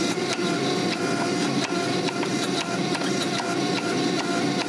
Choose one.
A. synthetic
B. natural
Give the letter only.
B